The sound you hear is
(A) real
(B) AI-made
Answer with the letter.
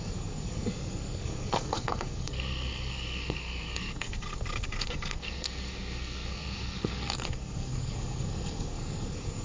B